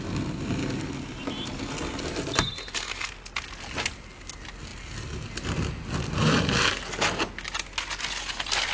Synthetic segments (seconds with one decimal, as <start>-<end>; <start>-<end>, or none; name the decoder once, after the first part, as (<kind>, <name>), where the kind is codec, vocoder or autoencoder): none